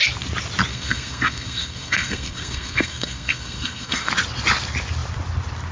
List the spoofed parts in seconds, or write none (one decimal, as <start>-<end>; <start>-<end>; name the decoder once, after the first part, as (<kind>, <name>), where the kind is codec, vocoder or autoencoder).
0.7-4.1 (codec, SNAC)